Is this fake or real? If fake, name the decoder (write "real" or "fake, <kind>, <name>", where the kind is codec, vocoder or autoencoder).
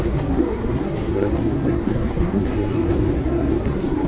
fake, codec, SNAC